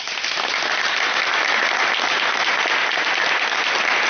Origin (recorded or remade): recorded